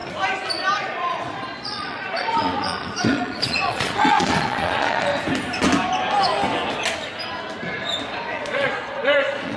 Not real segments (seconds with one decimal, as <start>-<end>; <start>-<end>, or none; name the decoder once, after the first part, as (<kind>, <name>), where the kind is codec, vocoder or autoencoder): 0.8-5.1 (vocoder, Vocos); 8.0-9.6